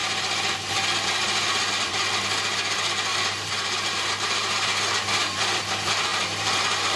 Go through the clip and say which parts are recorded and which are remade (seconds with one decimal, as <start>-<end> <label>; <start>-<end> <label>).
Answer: 0.0-3.1 recorded; 3.1-5.6 remade; 5.6-6.1 recorded; 6.1-7.0 remade